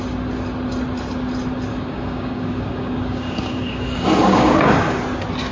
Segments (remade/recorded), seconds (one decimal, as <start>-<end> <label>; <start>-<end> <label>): 0.0-1.7 recorded; 1.7-5.0 remade; 5.0-5.5 recorded